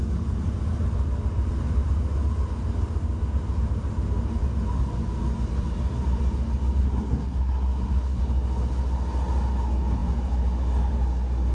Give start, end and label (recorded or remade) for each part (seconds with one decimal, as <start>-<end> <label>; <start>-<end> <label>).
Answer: 0.0-6.8 recorded; 6.8-8.2 remade; 8.2-11.5 recorded